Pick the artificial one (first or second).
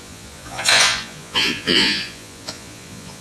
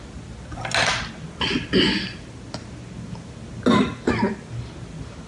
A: first